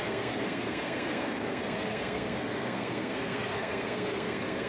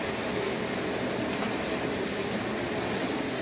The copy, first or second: first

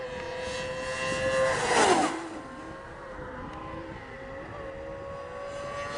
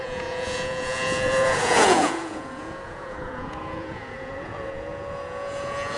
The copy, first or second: second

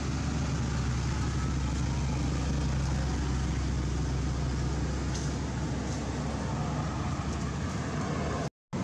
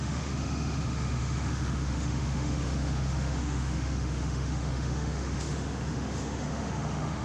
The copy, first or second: second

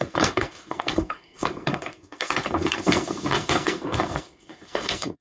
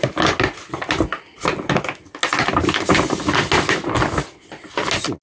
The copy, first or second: first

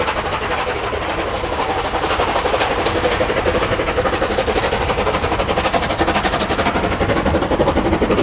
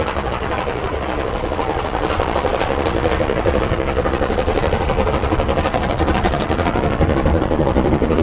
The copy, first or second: second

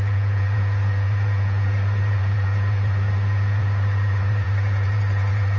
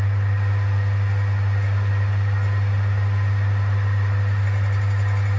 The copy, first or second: first